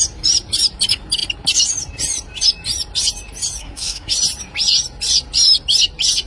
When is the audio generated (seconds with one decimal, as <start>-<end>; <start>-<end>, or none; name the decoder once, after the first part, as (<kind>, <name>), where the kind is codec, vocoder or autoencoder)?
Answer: 3.6-4.1 (codec, SNAC)